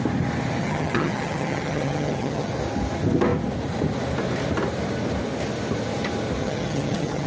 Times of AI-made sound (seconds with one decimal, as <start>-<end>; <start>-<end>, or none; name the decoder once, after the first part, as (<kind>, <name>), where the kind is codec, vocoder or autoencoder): 0.6-2.5 (vocoder, HiFi-GAN); 6.4-7.3